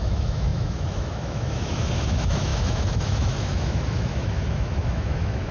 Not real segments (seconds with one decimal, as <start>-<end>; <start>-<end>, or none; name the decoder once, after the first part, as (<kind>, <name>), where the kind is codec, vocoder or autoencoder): 0.0-5.5 (autoencoder, DAC-VAE)